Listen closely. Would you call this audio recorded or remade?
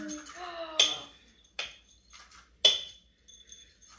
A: recorded